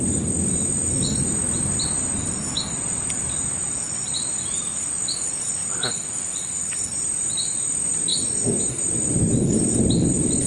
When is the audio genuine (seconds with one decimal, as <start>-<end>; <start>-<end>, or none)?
0.0-10.5